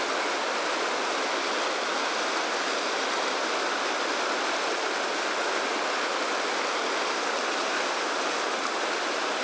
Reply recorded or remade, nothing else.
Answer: recorded